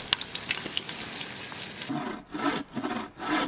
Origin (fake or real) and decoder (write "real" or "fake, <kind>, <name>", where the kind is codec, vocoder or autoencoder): real